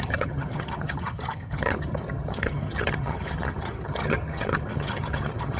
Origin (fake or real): fake